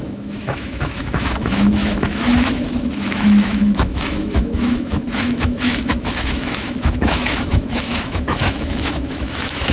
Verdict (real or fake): fake